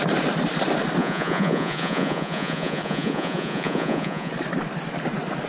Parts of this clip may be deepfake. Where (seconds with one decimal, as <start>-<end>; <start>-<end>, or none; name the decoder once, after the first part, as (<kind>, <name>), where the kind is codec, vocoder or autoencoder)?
1.0-4.3 (vocoder, Vocos)

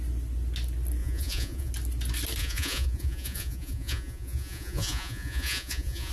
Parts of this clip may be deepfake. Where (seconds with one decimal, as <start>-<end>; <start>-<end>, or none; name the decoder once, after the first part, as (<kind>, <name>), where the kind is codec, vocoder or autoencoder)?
1.0-1.7 (vocoder, Vocos); 2.4-6.1